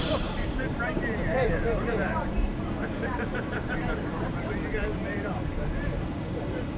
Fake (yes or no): yes